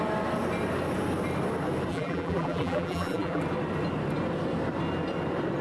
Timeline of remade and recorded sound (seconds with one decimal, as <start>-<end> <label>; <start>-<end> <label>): 0.0-1.9 recorded; 1.9-3.4 remade; 3.4-5.6 recorded